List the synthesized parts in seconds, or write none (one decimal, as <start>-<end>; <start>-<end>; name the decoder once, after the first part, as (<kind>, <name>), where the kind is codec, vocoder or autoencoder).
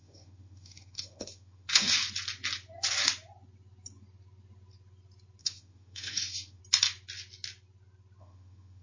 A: 0.0-2.0 (autoencoder, DAC-VAE); 5.4-6.6; 8.2-8.8